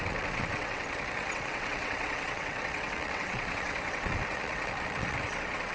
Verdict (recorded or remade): remade